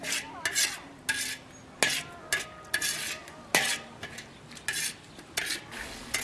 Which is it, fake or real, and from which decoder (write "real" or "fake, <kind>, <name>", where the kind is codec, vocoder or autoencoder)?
real